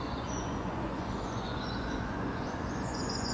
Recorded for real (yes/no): no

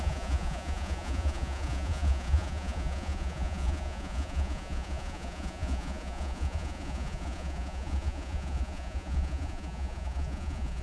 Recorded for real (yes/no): no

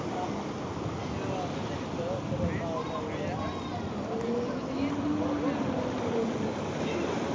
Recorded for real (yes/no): yes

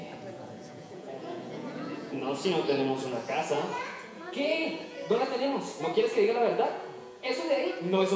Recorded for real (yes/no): no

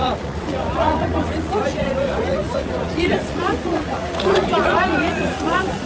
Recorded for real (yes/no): no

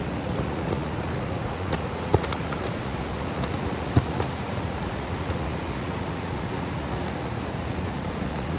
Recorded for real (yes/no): no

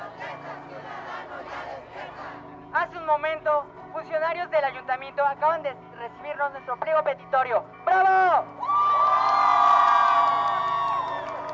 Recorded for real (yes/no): yes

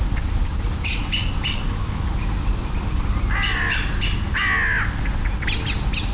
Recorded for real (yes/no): yes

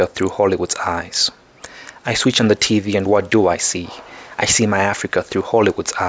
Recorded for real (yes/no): yes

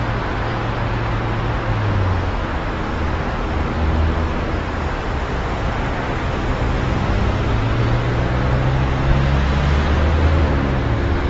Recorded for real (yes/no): yes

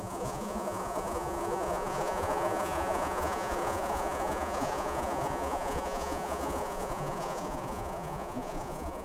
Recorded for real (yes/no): no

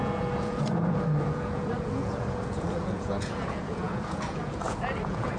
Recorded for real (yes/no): no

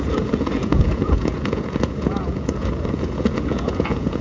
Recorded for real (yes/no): no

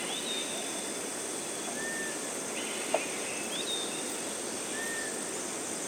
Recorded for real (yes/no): yes